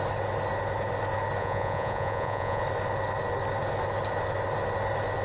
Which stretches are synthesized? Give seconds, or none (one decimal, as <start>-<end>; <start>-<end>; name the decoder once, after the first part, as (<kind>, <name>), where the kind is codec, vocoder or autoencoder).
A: 1.4-2.6 (vocoder, Vocos)